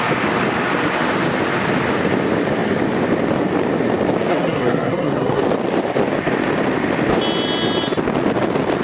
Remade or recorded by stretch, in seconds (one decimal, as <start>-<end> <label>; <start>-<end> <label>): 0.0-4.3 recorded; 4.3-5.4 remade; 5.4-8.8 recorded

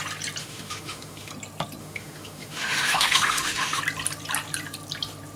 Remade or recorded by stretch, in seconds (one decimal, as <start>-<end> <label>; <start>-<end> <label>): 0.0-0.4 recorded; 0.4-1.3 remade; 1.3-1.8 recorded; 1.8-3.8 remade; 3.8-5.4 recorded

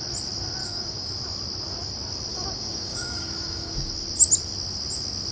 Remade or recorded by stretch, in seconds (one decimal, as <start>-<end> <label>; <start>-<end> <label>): 0.0-0.6 recorded; 0.6-1.1 remade; 1.1-2.3 recorded; 2.3-3.9 remade; 3.9-5.3 recorded

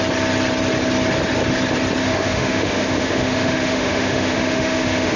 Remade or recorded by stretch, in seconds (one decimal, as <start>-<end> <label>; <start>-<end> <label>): 0.0-2.0 recorded; 2.0-5.2 remade

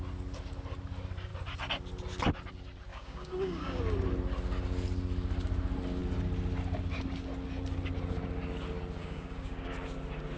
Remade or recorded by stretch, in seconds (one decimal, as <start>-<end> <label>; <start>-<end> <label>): 0.0-2.9 recorded; 2.9-3.8 remade; 3.8-9.0 recorded; 9.0-9.7 remade; 9.7-10.4 recorded